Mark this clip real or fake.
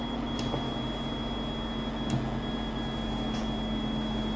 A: real